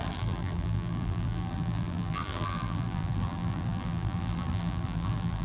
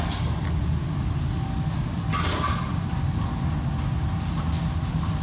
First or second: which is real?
second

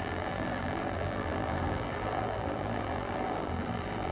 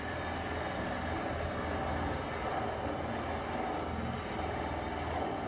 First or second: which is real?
second